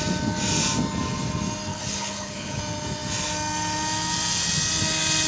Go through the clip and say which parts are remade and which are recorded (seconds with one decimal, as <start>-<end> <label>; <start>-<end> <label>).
0.0-1.7 recorded; 1.7-2.6 remade; 2.6-5.3 recorded